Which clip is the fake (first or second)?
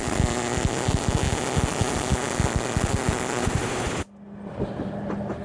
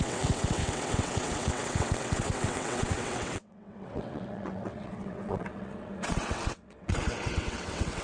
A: second